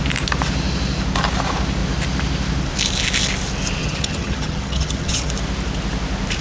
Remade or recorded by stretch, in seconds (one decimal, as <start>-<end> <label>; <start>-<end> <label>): 0.0-3.8 recorded; 3.8-5.3 remade; 5.3-6.4 recorded